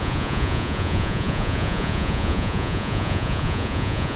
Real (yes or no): no